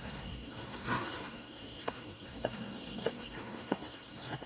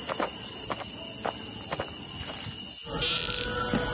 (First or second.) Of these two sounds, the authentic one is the second